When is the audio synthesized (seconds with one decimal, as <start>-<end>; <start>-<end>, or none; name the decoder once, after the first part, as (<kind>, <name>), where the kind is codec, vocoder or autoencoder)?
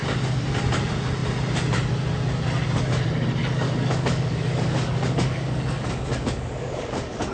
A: 3.4-7.3 (codec, DAC)